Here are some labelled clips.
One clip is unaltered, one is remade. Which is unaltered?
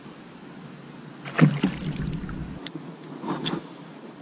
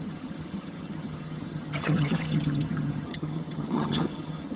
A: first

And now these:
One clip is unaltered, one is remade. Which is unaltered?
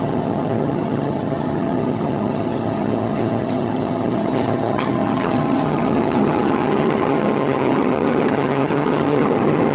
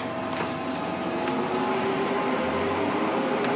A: second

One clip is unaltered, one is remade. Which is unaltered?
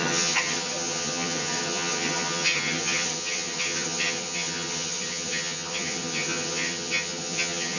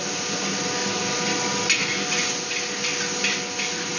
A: second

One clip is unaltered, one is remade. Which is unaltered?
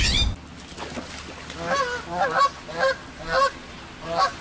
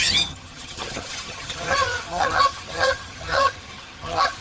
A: first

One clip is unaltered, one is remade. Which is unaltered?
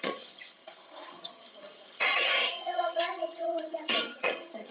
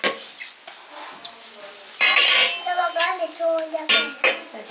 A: second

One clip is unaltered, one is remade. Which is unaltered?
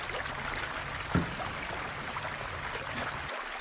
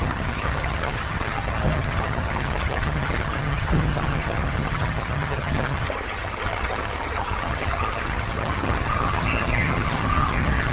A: first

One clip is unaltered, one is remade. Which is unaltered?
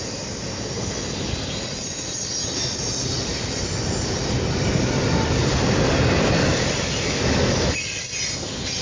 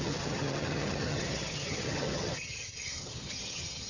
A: first